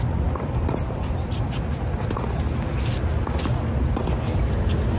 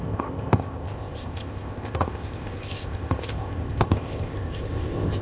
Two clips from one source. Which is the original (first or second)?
first